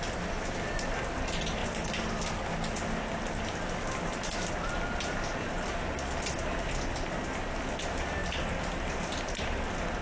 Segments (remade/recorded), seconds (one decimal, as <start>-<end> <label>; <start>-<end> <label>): 0.0-10.0 recorded